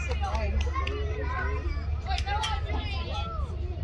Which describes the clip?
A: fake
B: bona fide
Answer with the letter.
B